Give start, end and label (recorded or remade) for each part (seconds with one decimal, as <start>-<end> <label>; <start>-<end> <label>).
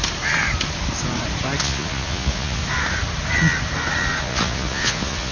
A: 0.0-1.6 recorded; 1.6-2.6 remade; 2.6-4.2 recorded; 4.2-5.3 remade